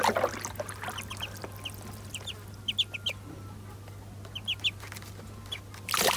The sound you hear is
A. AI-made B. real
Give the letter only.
B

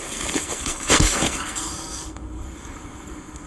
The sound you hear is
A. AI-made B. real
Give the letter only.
A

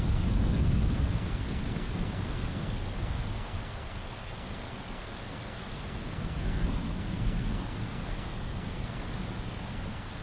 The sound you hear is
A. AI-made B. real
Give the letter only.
A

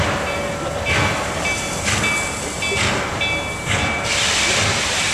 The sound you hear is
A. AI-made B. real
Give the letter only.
B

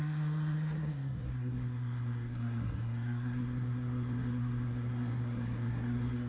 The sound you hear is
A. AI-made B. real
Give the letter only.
A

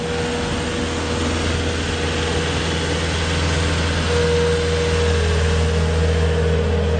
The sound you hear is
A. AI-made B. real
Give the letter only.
B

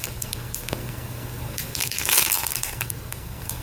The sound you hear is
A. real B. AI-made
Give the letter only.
B